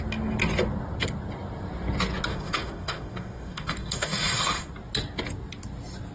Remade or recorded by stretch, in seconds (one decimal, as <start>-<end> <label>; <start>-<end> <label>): 0.0-2.3 recorded; 2.3-4.7 remade; 4.7-6.1 recorded